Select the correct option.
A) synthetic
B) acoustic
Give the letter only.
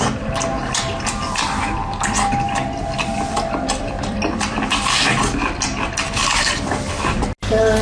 B